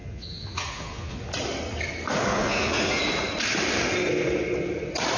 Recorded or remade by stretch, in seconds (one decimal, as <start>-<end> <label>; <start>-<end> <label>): 0.0-1.2 remade; 1.2-2.3 recorded; 2.3-3.0 remade; 3.0-5.2 recorded